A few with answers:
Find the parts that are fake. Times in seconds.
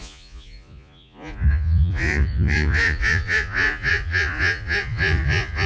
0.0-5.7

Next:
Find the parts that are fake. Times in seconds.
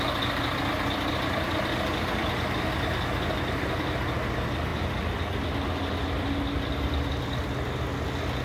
none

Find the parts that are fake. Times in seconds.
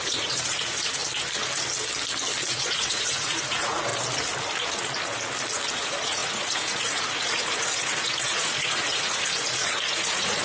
0.0-1.0; 2.5-3.9; 5.7-10.4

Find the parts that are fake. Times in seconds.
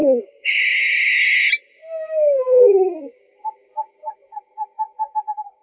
0.0-0.6; 1.8-5.6